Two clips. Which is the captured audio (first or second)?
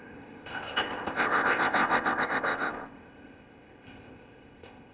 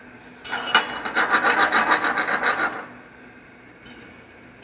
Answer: second